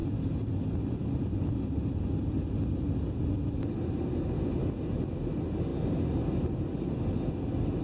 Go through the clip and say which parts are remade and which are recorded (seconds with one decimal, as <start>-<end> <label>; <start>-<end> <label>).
0.0-7.8 recorded